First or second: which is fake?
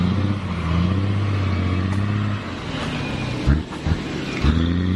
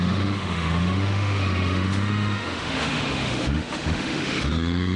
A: second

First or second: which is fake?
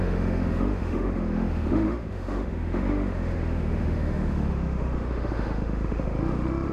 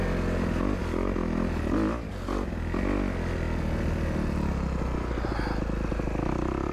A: first